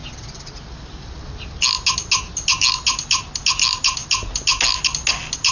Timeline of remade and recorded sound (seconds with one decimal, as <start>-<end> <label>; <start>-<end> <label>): 0.0-5.5 recorded